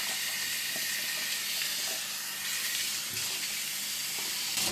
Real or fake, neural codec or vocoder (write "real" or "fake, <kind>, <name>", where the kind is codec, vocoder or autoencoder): real